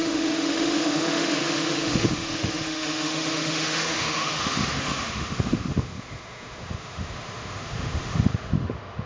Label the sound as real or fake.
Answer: fake